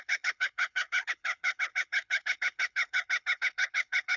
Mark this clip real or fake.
fake